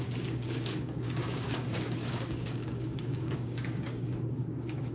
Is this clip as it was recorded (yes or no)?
no